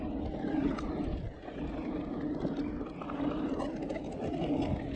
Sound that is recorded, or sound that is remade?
recorded